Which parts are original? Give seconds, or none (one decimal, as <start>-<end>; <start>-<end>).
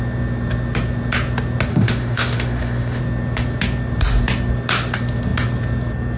0.0-1.7; 3.0-6.2